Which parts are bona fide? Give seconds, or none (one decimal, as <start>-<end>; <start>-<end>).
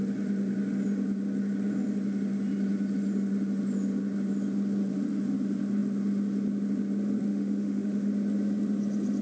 0.0-7.3; 8.1-9.2